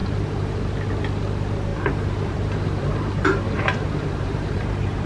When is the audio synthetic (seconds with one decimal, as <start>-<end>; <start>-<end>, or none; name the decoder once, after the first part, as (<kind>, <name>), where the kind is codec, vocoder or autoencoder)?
0.0-0.6 (vocoder, BigVGAN v2); 1.7-5.1